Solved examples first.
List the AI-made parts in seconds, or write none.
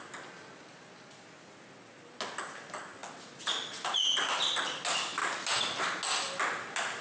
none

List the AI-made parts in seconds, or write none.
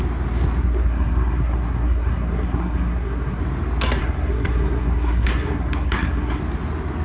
0.6-3.4 (codec, SNAC); 4.0-6.4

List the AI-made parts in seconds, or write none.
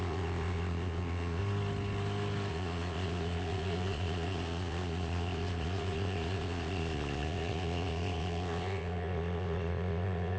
0.0-1.4 (vocoder, Vocos); 2.5-10.4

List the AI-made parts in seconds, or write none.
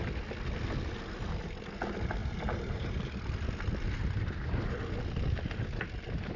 none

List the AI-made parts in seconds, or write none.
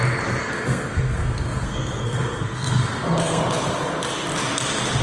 0.4-3.4 (codec, SNAC)